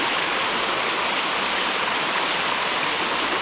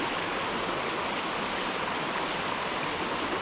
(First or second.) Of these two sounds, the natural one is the second